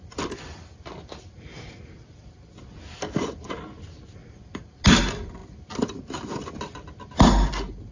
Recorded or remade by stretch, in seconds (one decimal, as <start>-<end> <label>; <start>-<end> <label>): 0.0-7.9 recorded